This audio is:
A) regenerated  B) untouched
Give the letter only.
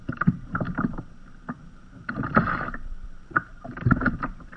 A